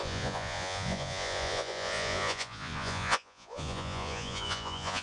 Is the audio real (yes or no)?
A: no